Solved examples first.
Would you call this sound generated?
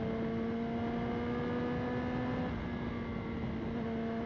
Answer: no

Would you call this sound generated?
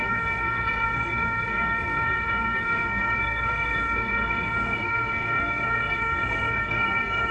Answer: yes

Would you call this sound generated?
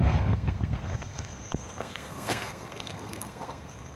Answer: yes